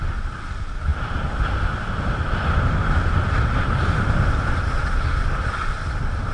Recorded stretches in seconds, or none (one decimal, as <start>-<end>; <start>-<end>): 0.0-6.3